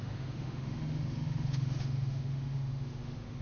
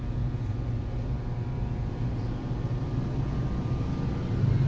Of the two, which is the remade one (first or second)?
first